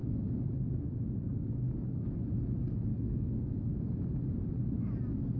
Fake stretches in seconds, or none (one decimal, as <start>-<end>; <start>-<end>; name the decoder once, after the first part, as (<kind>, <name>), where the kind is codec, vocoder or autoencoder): 2.9-3.7 (codec, SNAC)